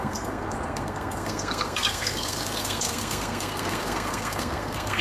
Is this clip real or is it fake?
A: fake